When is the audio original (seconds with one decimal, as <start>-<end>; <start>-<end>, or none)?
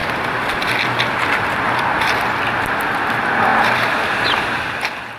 0.0-5.2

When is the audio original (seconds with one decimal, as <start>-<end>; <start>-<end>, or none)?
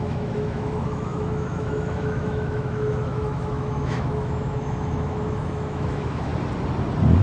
6.3-7.2